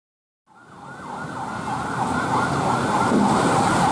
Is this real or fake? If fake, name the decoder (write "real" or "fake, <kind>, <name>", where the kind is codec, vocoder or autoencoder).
real